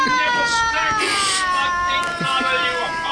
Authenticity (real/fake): real